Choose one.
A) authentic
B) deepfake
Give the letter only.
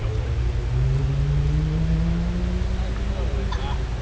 A